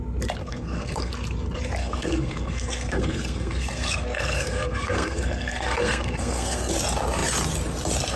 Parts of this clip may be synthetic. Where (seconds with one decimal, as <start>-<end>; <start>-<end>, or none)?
0.4-1.1; 1.8-6.7